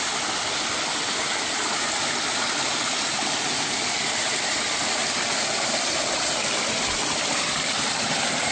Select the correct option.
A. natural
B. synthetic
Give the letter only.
A